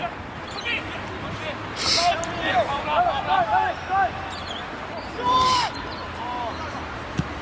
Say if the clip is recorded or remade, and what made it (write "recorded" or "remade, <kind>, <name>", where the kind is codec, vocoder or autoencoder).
recorded